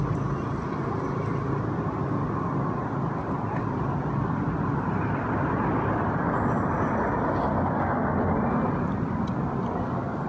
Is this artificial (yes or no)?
no